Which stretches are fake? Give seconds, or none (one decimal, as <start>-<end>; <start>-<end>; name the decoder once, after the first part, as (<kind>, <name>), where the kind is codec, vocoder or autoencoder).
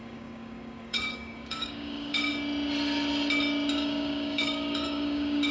0.0-2.3 (codec, DAC); 3.7-5.5